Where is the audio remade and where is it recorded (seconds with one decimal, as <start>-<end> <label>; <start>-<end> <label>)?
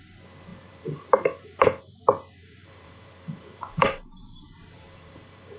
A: 0.0-0.5 recorded; 0.5-2.0 remade; 2.0-2.4 recorded; 2.4-5.6 remade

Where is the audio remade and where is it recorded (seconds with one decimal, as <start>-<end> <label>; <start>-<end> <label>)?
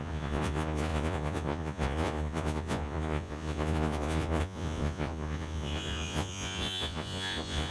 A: 0.0-7.7 remade